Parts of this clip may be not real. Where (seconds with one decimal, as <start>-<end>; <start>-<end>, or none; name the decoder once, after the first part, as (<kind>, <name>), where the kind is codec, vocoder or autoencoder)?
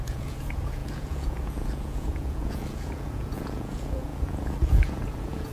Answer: 0.0-5.5 (vocoder, Vocos)